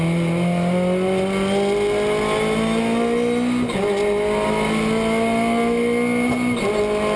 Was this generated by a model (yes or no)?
no